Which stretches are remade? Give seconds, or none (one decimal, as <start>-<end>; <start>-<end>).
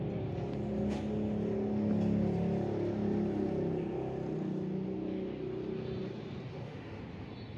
6.5-7.0